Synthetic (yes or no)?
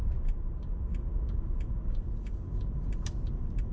no